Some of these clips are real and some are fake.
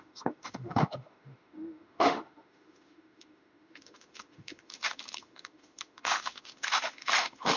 fake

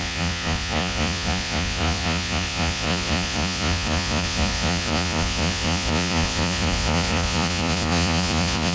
fake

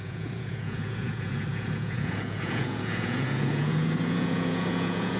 fake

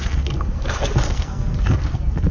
fake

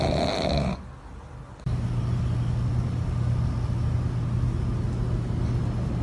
real